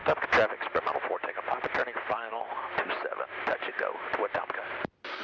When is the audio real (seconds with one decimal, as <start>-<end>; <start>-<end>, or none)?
0.0-0.8; 2.3-3.3